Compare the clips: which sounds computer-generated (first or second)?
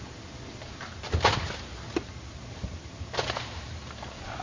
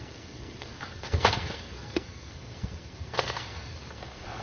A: second